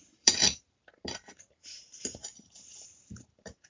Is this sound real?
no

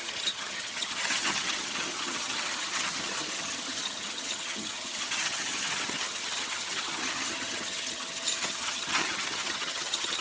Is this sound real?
no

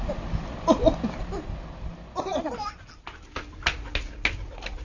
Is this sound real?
yes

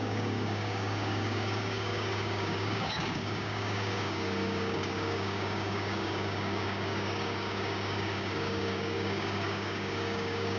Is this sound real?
no